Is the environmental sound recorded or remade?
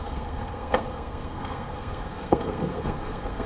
remade